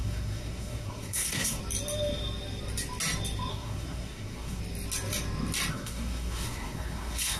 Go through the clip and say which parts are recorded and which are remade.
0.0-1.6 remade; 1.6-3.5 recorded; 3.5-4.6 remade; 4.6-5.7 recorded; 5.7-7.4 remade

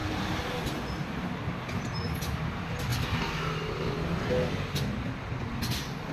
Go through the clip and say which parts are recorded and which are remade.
0.0-6.1 recorded

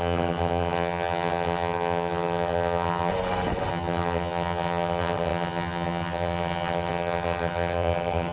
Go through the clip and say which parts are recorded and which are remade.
0.0-3.1 remade; 3.1-3.7 recorded; 3.7-8.3 remade

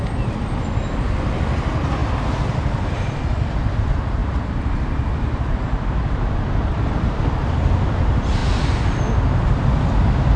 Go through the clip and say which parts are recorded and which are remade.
0.0-2.0 recorded; 2.0-3.2 remade; 3.2-4.2 recorded; 4.2-7.5 remade; 7.5-10.4 recorded

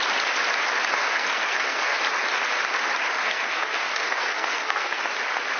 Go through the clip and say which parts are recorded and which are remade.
0.0-1.0 recorded; 1.0-2.0 remade; 2.0-3.2 recorded; 3.2-5.0 remade; 5.0-5.6 recorded

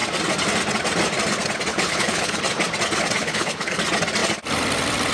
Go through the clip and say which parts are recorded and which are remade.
0.0-1.7 recorded; 1.7-2.4 remade; 2.4-3.2 recorded; 3.2-3.8 remade; 3.8-5.1 recorded

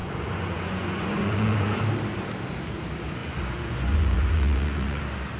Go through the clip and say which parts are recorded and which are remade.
0.0-1.8 remade; 1.8-3.2 recorded; 3.2-5.0 remade; 5.0-5.4 recorded

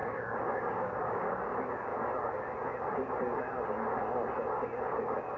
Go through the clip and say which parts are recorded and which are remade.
0.0-1.9 remade; 1.9-5.4 recorded